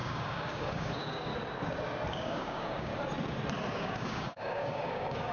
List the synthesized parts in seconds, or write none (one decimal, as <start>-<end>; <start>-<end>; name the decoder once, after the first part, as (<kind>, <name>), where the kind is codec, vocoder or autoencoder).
0.0-1.3 (codec, DAC); 2.1-2.9; 3.7-5.3